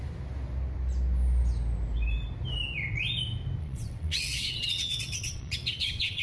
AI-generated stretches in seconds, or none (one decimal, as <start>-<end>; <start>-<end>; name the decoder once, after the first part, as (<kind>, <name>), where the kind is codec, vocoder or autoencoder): 3.6-6.2 (vocoder, WaveNeXt)

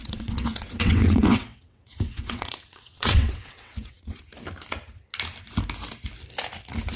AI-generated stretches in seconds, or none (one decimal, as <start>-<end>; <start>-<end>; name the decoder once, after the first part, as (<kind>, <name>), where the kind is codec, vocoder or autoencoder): 0.0-4.2 (vocoder, WaveNeXt)

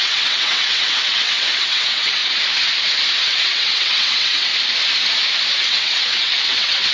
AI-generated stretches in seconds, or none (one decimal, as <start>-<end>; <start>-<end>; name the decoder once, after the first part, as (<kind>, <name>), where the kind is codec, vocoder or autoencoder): 0.0-2.2 (vocoder, WaveNeXt); 3.2-4.5; 5.5-6.9

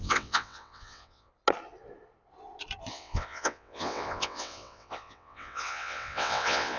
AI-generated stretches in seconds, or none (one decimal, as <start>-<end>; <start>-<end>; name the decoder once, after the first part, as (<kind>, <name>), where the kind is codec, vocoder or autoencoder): 0.0-1.3 (vocoder, WaveNeXt); 2.9-6.8

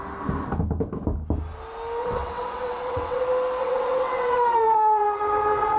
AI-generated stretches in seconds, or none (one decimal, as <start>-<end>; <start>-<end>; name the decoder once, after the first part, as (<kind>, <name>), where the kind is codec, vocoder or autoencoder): 2.0-3.2 (vocoder, WaveNeXt); 3.6-5.8

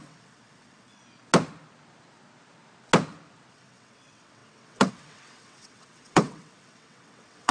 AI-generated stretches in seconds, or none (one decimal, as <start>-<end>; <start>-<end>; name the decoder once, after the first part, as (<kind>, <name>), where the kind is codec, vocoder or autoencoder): 0.0-1.0 (vocoder, WaveNeXt); 3.5-7.5

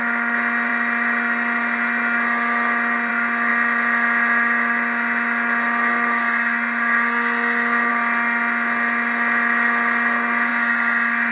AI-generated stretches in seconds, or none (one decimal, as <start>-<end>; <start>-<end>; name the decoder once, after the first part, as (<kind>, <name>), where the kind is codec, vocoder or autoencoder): none

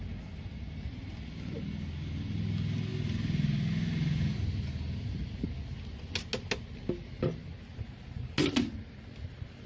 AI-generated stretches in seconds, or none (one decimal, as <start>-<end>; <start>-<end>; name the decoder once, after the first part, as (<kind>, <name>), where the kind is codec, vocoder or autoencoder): none